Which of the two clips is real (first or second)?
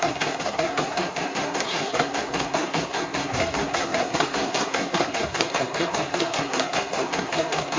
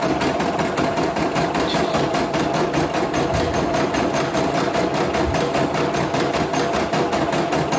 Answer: second